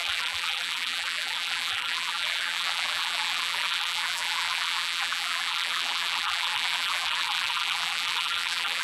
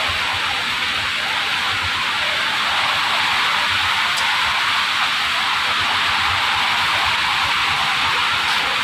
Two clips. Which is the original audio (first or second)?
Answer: second